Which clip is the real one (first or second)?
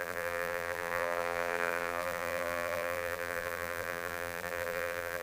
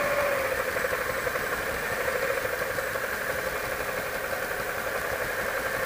second